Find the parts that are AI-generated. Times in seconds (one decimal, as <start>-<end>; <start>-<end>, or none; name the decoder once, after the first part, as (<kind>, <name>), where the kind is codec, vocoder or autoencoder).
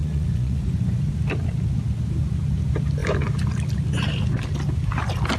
0.0-1.0 (vocoder, Vocos)